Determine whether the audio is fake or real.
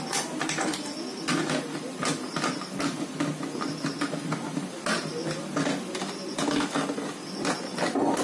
real